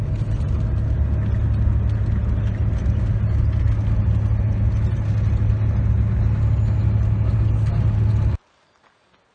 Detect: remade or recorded recorded